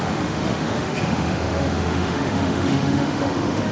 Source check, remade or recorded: remade